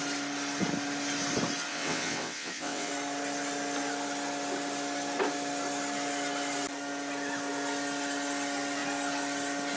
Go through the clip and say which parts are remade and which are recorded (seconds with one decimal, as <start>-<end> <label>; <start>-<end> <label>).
0.0-1.7 recorded; 1.7-2.9 remade; 2.9-9.8 recorded